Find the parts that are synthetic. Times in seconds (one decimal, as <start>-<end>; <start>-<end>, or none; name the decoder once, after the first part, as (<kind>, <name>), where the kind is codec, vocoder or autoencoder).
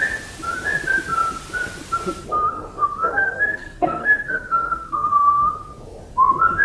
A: 3.0-5.5 (codec, SNAC)